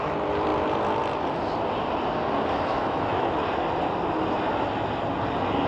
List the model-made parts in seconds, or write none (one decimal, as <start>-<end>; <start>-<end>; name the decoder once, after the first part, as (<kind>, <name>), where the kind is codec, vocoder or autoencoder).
2.7-3.4 (autoencoder, DAC-VAE)